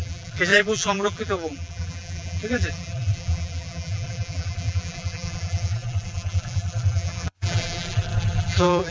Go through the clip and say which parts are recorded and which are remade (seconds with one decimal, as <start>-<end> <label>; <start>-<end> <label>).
0.0-8.9 remade